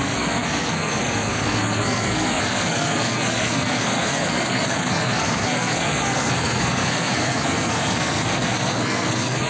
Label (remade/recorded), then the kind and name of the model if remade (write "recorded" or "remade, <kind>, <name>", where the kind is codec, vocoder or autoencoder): remade, codec, SNAC